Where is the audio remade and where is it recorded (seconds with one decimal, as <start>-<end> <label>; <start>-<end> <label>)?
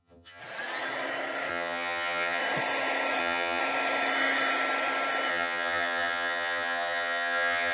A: 0.0-0.4 remade; 0.4-1.5 recorded; 1.5-2.4 remade; 2.4-3.2 recorded; 3.2-3.6 remade; 3.6-5.3 recorded; 5.3-7.7 remade